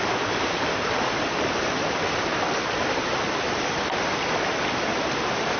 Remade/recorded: recorded